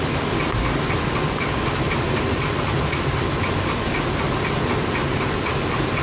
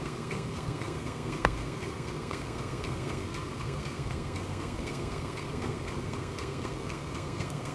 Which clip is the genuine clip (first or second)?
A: first